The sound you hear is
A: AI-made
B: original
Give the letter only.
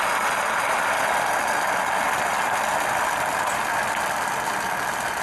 B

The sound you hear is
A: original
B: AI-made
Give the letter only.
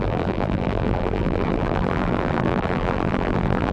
B